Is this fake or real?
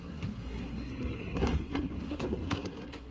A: fake